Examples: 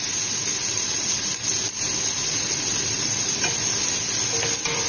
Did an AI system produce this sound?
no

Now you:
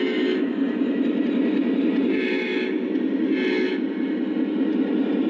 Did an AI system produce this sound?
no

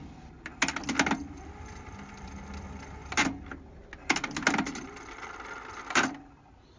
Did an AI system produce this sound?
no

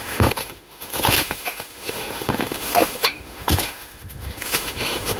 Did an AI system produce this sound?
yes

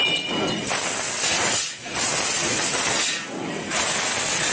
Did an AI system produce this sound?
no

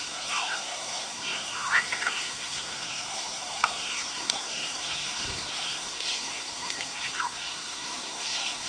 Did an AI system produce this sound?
yes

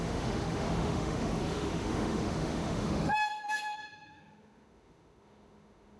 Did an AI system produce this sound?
yes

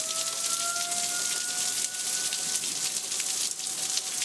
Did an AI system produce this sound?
no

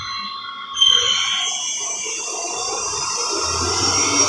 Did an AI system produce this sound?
no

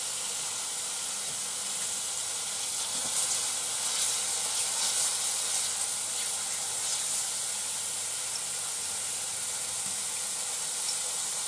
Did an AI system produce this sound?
no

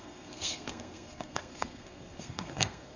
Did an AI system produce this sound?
yes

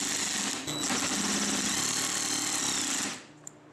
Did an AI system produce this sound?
no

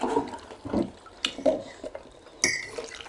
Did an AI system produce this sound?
no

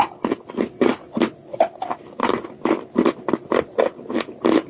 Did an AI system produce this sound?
no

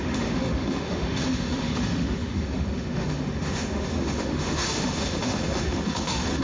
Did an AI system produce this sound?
yes